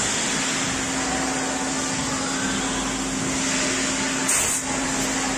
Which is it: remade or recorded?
recorded